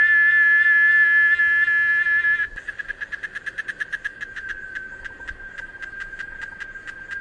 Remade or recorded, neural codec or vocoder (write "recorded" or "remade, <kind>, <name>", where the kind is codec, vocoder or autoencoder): recorded